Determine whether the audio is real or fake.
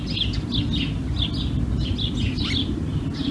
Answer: real